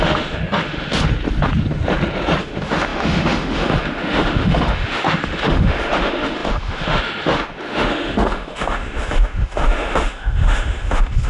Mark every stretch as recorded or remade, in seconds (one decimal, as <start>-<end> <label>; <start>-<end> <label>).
0.0-1.1 remade; 1.1-2.4 recorded; 2.4-11.3 remade